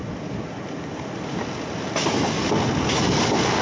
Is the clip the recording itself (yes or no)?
yes